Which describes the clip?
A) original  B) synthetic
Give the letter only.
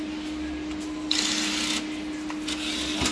A